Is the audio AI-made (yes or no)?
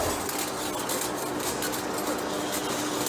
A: no